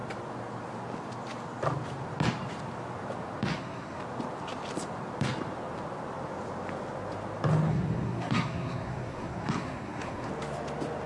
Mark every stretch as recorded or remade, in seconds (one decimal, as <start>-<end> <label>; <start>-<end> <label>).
0.0-3.5 recorded; 3.5-4.0 remade; 4.0-7.7 recorded; 7.7-10.3 remade; 10.3-11.1 recorded